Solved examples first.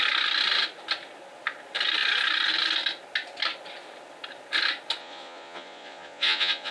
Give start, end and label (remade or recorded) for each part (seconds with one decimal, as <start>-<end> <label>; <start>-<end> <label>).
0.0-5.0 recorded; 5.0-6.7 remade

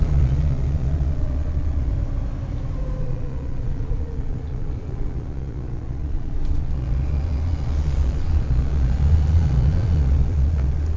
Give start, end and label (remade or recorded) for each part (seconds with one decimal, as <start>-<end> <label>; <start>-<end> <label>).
0.0-1.9 remade; 1.9-3.0 recorded; 3.0-11.0 remade

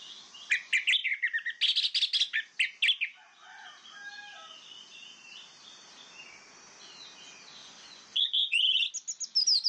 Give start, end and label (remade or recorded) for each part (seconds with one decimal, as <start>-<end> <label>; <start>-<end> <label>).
0.0-7.6 recorded; 7.6-8.9 remade; 8.9-9.7 recorded

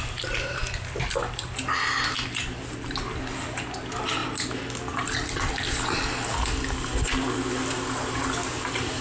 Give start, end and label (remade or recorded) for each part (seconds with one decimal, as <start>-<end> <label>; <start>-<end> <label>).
0.0-9.0 recorded

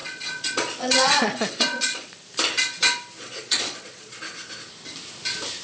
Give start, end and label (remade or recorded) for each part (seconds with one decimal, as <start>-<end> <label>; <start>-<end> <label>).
0.0-2.2 remade; 2.2-3.2 recorded; 3.2-4.2 remade; 4.2-5.6 recorded

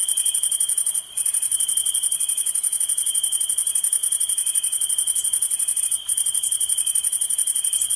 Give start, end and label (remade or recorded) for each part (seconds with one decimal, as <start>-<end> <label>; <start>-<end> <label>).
0.0-8.0 recorded

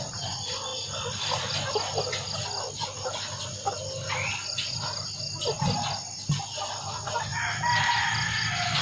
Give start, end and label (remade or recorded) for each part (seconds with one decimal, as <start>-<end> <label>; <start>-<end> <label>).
0.0-8.8 recorded

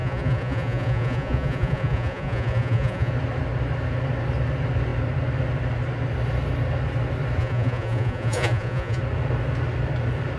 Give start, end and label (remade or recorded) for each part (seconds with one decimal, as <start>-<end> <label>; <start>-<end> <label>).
0.0-3.1 remade; 3.1-7.4 recorded; 7.4-9.0 remade; 9.0-10.4 recorded